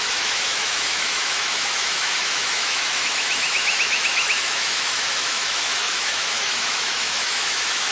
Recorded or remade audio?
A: remade